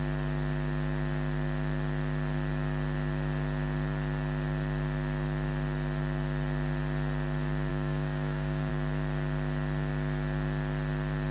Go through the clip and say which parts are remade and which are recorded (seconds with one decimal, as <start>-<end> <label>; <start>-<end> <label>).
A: 0.0-7.7 recorded; 7.7-8.7 remade; 8.7-11.3 recorded